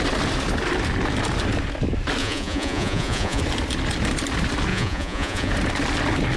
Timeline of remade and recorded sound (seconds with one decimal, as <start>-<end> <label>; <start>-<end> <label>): 0.0-2.2 recorded; 2.2-3.4 remade; 3.4-4.7 recorded; 4.7-5.5 remade; 5.5-6.4 recorded